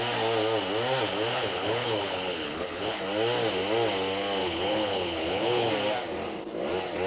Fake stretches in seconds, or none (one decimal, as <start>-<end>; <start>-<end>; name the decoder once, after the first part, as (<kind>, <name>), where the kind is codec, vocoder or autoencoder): 1.3-3.0 (codec, HILCodec); 4.4-5.7

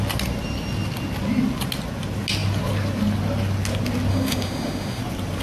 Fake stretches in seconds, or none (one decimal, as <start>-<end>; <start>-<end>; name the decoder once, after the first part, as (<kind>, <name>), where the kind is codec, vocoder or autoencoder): 4.1-5.0 (autoencoder, DAC-VAE)

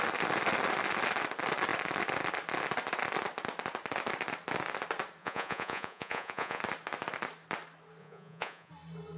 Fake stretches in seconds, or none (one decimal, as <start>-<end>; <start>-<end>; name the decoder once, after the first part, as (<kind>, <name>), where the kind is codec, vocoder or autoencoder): 5.2-6.6 (vocoder, Vocos); 8.0-8.7

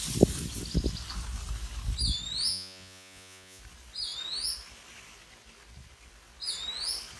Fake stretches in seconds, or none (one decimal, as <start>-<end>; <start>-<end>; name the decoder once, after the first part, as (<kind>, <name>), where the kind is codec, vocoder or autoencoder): 2.5-3.6 (vocoder, Vocos)

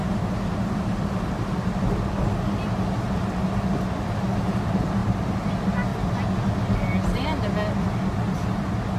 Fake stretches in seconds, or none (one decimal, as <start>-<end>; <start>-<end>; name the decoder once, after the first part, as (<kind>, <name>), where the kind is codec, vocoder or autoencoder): 5.0-5.5 (vocoder, BigVGAN v2)

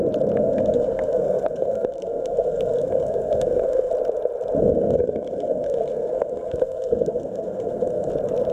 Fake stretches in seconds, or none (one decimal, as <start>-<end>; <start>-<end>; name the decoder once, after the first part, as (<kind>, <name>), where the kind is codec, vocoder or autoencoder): 0.4-3.9 (codec, SNAC); 4.6-8.1